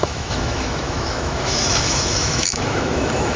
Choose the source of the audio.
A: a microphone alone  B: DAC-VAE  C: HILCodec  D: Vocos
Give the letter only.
B